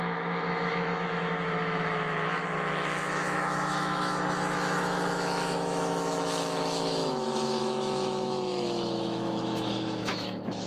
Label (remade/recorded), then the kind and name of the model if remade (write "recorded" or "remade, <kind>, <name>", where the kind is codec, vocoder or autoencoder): remade, autoencoder, DAC-VAE